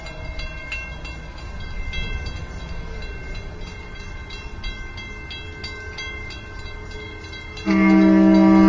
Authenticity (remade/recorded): recorded